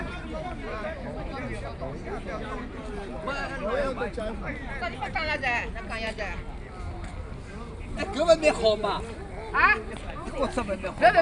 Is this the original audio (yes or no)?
yes